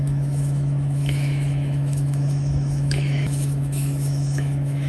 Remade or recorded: remade